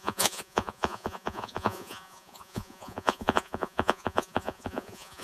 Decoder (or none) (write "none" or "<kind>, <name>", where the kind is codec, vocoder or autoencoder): vocoder, Vocos